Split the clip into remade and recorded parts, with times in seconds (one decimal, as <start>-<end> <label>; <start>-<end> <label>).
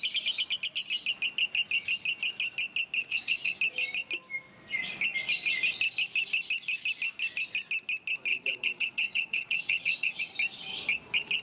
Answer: 0.0-3.0 recorded; 3.0-3.6 remade; 3.6-8.3 recorded; 8.3-10.2 remade; 10.2-11.4 recorded